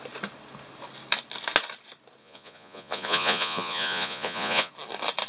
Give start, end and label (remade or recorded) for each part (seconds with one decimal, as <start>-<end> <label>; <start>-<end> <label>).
0.0-2.2 recorded; 2.2-4.7 remade; 4.7-5.3 recorded